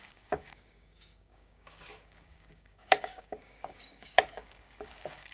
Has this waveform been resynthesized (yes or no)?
yes